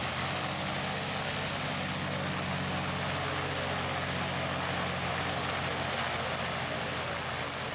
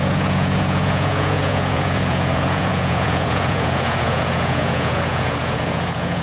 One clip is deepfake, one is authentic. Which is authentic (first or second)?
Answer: first